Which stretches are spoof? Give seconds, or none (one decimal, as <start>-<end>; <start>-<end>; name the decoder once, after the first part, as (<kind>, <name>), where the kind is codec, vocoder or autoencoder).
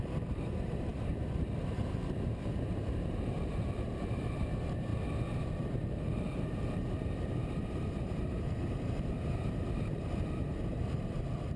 0.0-4.9 (vocoder, BigVGAN v2); 6.1-11.6